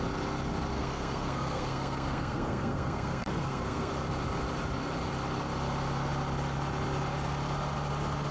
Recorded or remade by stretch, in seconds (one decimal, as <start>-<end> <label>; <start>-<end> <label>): 0.0-0.7 recorded; 0.7-3.9 remade; 3.9-8.3 recorded